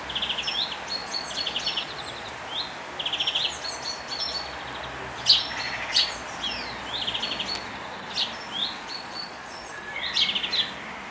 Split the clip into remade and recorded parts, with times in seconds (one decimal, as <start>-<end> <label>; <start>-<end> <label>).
0.0-1.0 recorded; 1.0-2.3 remade; 2.3-8.6 recorded; 8.6-9.9 remade; 9.9-11.1 recorded